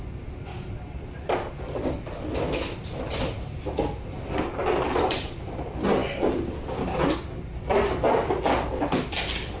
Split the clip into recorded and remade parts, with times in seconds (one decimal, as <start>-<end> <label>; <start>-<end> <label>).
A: 0.0-9.6 recorded